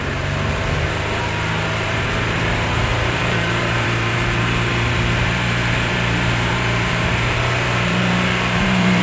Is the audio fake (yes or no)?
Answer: yes